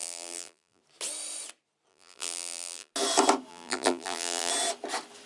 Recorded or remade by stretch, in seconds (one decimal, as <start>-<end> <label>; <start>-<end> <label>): 0.0-0.8 remade; 0.8-1.9 recorded; 1.9-2.9 remade; 2.9-3.5 recorded; 3.5-4.5 remade; 4.5-5.3 recorded